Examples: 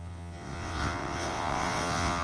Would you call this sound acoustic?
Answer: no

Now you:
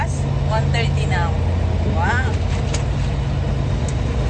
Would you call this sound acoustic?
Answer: yes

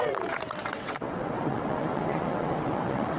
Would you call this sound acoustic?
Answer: no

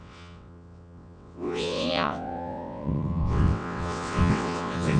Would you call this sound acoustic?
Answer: no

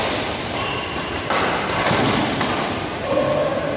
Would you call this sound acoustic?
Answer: yes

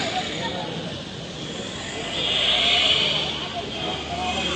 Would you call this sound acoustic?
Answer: yes